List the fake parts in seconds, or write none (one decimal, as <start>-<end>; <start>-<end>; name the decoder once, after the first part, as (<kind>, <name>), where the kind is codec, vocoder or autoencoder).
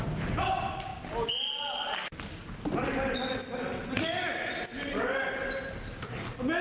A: none